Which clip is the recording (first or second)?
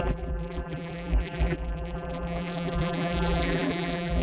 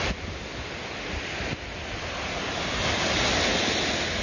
second